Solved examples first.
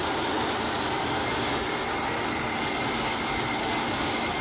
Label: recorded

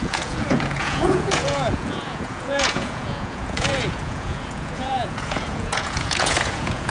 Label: remade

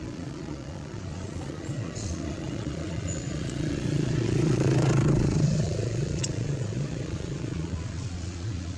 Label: remade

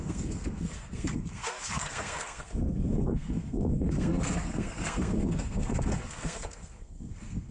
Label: remade